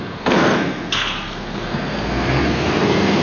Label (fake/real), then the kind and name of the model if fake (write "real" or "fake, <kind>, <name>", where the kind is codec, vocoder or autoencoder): fake, codec, SNAC